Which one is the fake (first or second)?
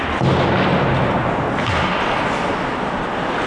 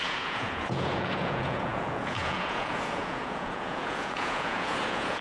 second